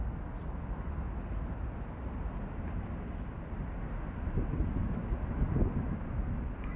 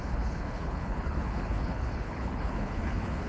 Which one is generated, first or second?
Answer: second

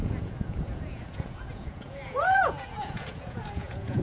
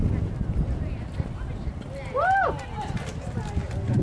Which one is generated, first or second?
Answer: first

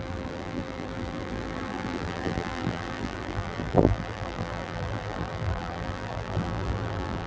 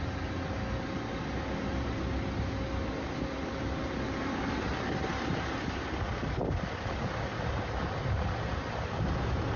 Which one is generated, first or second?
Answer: first